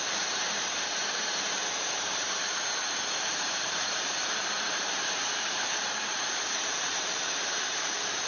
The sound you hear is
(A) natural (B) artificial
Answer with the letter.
B